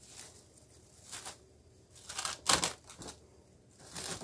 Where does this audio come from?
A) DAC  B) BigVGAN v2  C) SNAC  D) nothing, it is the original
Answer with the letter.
D